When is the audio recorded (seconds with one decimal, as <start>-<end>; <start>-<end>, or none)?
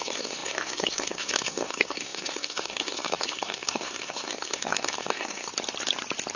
5.5-6.4